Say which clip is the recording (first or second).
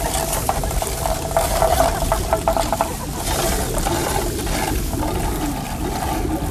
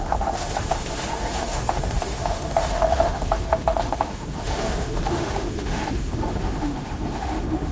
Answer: first